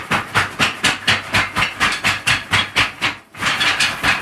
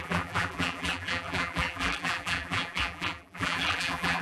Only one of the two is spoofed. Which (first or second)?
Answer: second